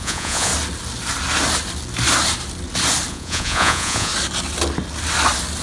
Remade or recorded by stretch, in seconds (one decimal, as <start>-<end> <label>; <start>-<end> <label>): 0.0-0.5 remade; 0.5-3.1 recorded; 3.1-4.1 remade; 4.1-5.6 recorded